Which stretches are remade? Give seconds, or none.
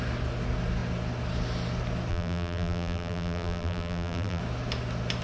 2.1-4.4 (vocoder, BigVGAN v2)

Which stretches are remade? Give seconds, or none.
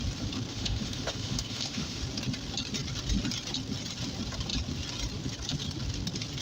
0.5-2.0 (autoencoder, DAC-VAE)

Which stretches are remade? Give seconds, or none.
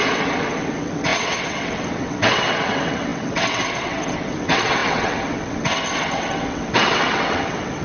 0.0-7.8 (vocoder, WaveNeXt)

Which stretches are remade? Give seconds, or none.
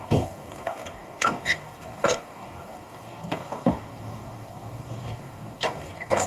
0.0-6.3 (codec, DAC)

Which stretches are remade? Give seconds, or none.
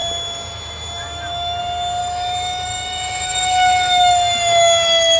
0.0-1.6 (autoencoder, DAC-VAE); 2.0-5.2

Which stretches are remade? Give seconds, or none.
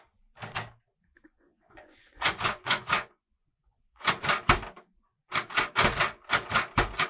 1.1-4.2 (vocoder, Vocos)